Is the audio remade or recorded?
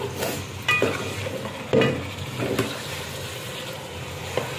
recorded